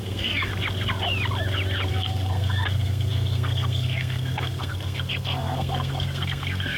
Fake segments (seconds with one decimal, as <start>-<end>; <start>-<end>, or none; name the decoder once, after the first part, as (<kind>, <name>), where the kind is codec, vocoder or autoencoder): 0.0-0.5 (codec, SNAC); 1.9-6.8